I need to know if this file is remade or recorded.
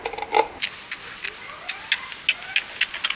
recorded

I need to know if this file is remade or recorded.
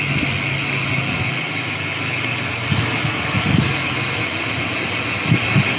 recorded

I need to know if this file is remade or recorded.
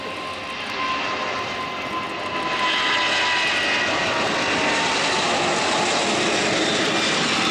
recorded